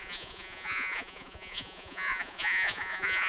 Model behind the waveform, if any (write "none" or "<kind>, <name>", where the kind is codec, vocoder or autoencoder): vocoder, Vocos